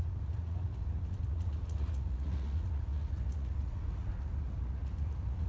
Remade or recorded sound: remade